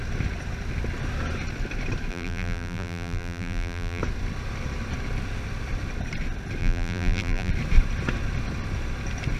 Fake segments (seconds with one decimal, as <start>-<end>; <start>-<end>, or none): 2.1-4.0; 6.6-7.5